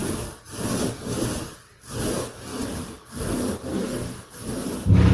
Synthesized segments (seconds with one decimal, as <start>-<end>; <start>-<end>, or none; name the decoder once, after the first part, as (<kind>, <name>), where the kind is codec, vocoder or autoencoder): 3.7-4.4 (codec, SNAC)